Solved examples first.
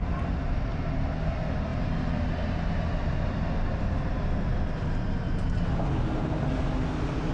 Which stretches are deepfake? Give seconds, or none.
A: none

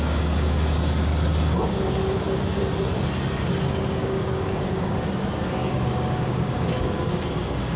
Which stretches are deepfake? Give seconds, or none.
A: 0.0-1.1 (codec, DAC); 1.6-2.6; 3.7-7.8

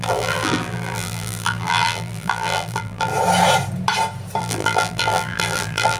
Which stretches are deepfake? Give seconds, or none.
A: 0.0-3.1 (vocoder, BigVGAN v2); 4.4-6.0

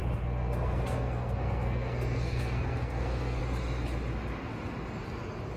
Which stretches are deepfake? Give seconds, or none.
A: 0.0-3.4 (codec, SNAC)

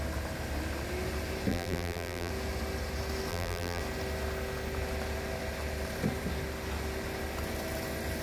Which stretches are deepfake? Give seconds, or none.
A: 1.5-2.3 (vocoder, BigVGAN v2); 3.3-3.8